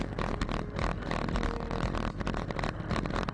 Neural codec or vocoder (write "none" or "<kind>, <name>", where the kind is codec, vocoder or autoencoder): none